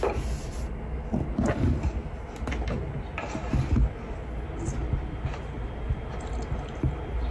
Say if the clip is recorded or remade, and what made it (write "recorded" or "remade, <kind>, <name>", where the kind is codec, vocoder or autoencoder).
recorded